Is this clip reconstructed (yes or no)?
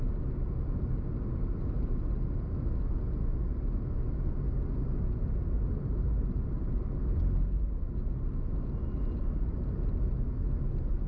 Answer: no